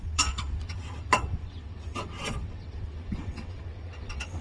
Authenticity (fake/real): fake